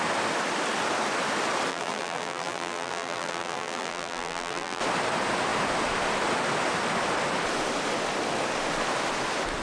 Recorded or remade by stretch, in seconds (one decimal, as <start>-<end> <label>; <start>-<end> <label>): 0.0-1.7 recorded; 1.7-4.8 remade; 4.8-9.6 recorded